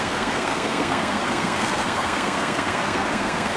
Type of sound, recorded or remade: remade